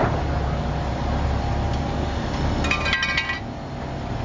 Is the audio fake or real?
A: real